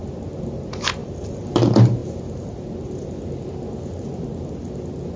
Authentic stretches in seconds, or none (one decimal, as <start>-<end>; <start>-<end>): 0.0-1.0; 1.5-5.2